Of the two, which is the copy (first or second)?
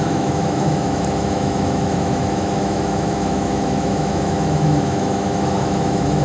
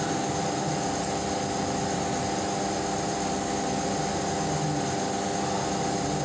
first